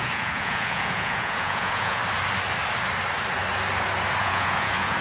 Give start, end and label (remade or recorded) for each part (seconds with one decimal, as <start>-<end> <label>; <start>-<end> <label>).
0.0-2.0 remade; 2.0-4.2 recorded; 4.2-5.0 remade